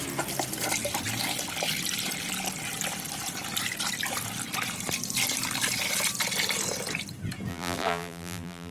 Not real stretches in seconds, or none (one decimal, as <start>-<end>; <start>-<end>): 7.5-8.7